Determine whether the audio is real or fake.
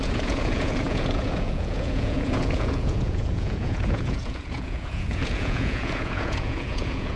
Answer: fake